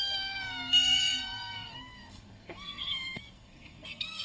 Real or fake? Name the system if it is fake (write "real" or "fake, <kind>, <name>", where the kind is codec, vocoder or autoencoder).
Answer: fake, codec, SNAC